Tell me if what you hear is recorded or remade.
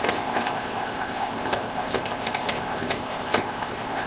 remade